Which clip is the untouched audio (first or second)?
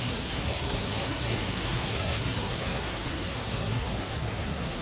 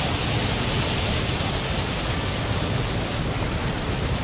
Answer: second